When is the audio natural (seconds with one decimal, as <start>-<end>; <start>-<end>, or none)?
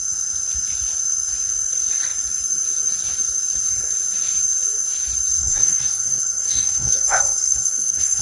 0.0-5.4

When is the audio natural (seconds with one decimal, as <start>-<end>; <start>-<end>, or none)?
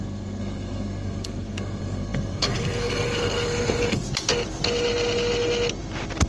4.0-6.3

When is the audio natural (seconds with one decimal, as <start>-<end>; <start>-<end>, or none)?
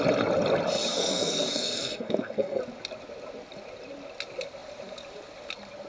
0.0-0.9; 2.6-5.9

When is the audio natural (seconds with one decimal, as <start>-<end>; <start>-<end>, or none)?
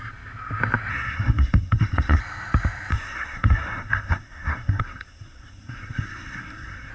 0.0-0.9; 2.2-2.9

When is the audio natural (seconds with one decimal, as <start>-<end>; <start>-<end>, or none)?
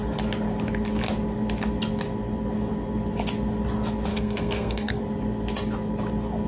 0.0-4.1; 5.0-6.5